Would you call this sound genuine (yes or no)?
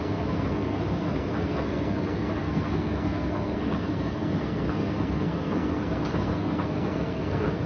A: no